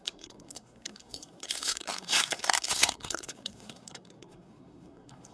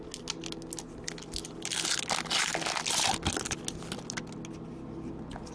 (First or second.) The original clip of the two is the second